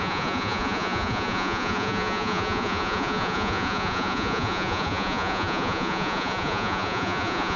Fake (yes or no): yes